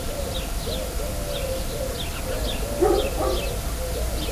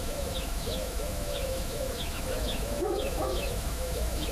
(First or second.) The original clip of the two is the first